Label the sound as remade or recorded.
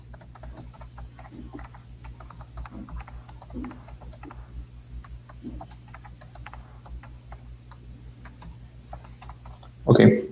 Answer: recorded